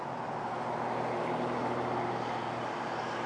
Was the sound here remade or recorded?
recorded